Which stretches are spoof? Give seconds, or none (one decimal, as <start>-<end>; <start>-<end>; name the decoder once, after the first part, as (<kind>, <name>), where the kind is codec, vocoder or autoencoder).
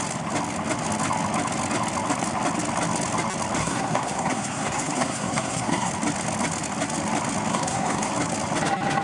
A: 3.6-5.9 (codec, SNAC); 7.5-8.1